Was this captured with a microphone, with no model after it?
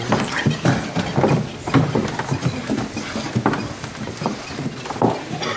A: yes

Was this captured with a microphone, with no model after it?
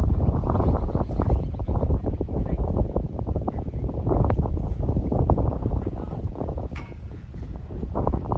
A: no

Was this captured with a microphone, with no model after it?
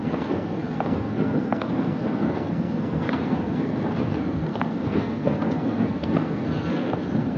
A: no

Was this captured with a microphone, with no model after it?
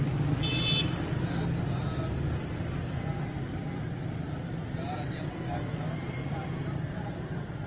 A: yes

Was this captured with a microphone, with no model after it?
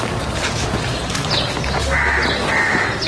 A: yes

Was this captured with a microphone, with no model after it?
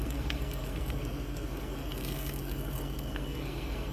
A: no